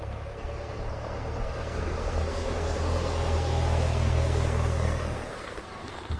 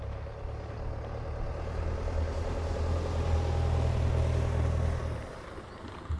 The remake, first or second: first